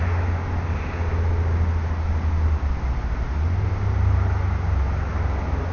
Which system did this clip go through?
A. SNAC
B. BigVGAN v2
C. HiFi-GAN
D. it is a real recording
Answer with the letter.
D